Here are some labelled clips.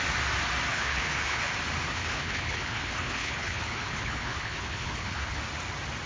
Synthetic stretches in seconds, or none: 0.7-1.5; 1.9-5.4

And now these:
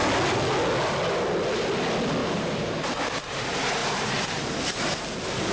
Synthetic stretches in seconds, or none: 2.2-3.4; 3.8-4.9

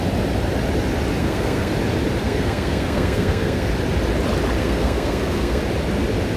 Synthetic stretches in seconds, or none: 1.2-1.7; 2.2-3.7; 4.6-5.6

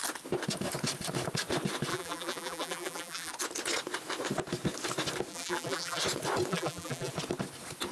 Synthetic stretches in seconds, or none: 1.9-3.3; 5.3-6.0; 6.5-7.1